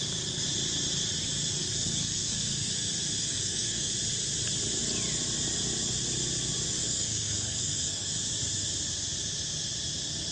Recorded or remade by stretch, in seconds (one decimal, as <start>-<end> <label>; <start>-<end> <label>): 0.0-1.6 recorded; 1.6-2.7 remade; 2.7-3.3 recorded; 3.3-3.9 remade; 3.9-6.8 recorded; 6.8-8.1 remade; 8.1-10.3 recorded